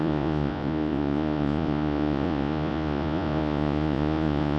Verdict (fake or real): fake